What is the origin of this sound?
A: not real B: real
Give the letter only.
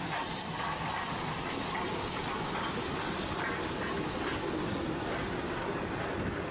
B